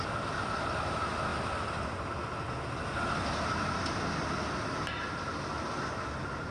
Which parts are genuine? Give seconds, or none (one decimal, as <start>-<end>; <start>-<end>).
0.0-6.5